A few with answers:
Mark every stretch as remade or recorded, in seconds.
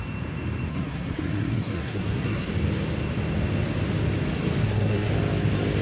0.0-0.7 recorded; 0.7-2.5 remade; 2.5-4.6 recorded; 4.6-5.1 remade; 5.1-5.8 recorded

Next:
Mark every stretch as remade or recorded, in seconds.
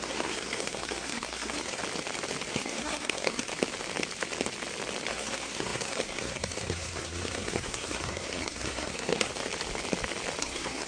0.0-1.8 remade; 1.8-2.5 recorded; 2.5-3.5 remade; 3.5-5.1 recorded; 5.1-9.3 remade; 9.3-10.4 recorded; 10.4-10.9 remade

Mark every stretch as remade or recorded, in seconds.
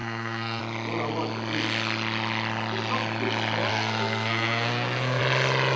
0.0-0.6 remade; 0.6-3.7 recorded; 3.7-5.2 remade; 5.2-5.8 recorded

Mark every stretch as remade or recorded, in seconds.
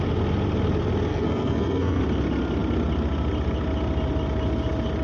0.0-1.1 recorded; 1.1-2.0 remade; 2.0-5.0 recorded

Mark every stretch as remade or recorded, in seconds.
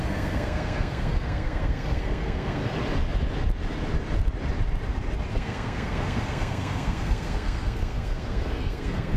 0.0-2.6 remade; 2.6-5.3 recorded; 5.3-9.2 remade